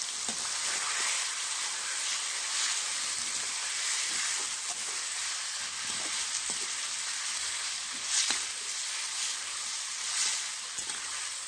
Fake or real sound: real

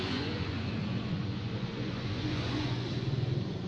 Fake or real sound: fake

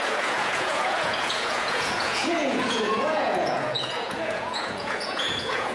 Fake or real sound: fake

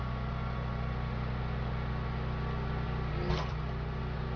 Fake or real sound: real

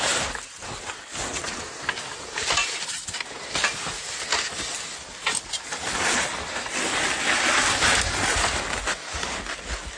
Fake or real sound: real